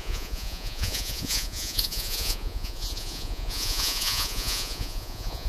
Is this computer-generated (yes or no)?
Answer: yes